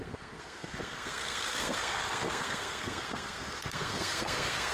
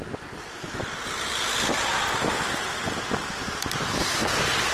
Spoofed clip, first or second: first